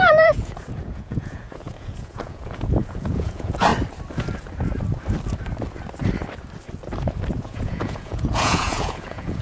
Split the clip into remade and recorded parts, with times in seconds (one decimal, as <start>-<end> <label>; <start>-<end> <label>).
0.0-3.7 remade; 3.7-7.4 recorded; 7.4-9.4 remade